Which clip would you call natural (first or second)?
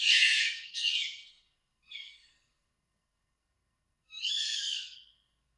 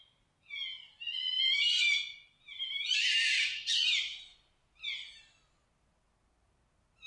second